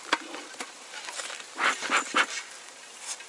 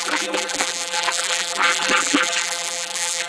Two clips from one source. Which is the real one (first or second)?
first